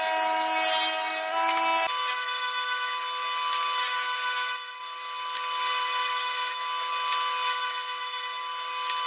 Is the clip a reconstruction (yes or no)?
no